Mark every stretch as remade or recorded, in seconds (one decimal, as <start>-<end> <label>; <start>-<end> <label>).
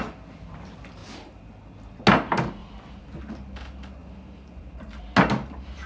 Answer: 0.0-1.0 recorded; 1.0-1.7 remade; 1.7-2.6 recorded; 2.6-3.2 remade; 3.2-4.0 recorded; 4.0-5.0 remade; 5.0-5.9 recorded